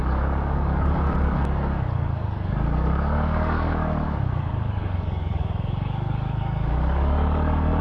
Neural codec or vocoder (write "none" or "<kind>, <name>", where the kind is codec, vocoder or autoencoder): codec, DAC